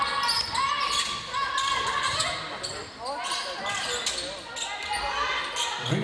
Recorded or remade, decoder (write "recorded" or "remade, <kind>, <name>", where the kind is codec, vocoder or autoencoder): recorded